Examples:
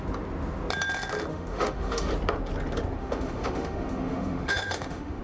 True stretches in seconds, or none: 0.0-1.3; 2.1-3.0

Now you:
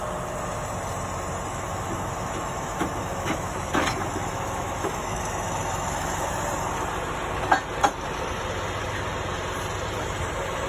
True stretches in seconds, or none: 0.0-1.5; 6.3-10.7

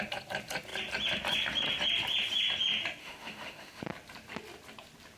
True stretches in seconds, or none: 0.0-3.0; 3.8-5.2

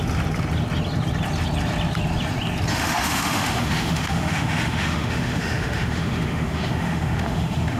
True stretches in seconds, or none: 0.0-2.7